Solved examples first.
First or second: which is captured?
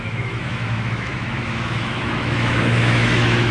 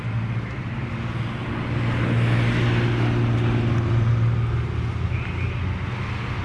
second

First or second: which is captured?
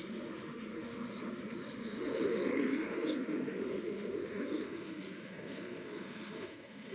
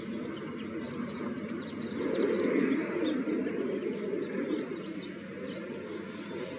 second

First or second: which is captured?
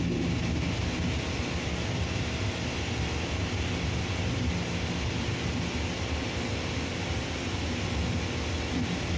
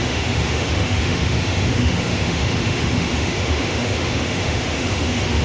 first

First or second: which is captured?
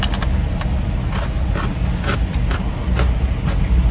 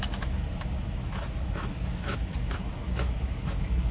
first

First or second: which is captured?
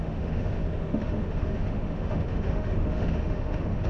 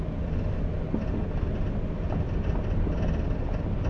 second